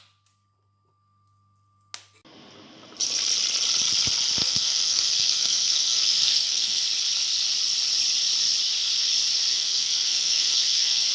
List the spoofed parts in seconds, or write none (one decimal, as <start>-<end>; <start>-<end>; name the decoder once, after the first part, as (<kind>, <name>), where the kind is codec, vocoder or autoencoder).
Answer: 4.4-6.8 (codec, SNAC); 9.5-11.1